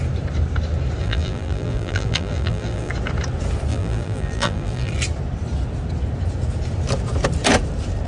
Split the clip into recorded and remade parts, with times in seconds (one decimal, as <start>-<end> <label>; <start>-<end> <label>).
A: 0.0-1.0 recorded; 1.0-2.9 remade; 2.9-3.7 recorded; 3.7-4.9 remade; 4.9-8.1 recorded